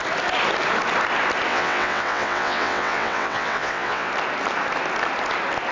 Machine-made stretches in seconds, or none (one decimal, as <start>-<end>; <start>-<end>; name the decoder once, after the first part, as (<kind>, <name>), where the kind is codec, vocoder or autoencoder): 1.5-4.1 (vocoder, WaveNeXt)